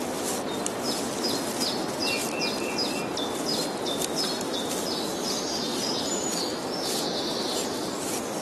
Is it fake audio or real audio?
real